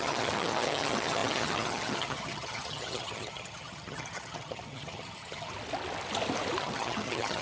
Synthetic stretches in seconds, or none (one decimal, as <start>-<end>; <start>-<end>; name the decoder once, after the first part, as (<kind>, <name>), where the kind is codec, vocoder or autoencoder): 0.0-5.5 (vocoder, HiFi-GAN); 6.6-7.4